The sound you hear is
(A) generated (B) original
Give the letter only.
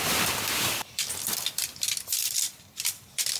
A